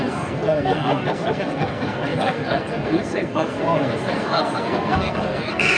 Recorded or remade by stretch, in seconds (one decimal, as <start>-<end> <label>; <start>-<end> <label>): 0.0-5.8 remade